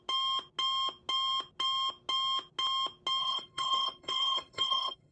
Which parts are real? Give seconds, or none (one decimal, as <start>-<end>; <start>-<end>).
0.0-3.2